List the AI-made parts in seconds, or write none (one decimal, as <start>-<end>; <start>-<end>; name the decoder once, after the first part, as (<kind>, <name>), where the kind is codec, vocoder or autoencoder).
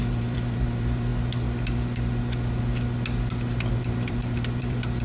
0.0-1.1 (vocoder, BigVGAN v2); 4.1-5.0